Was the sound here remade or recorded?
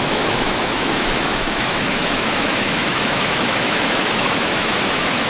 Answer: remade